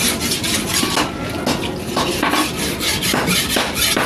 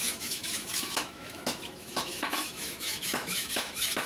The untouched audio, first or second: first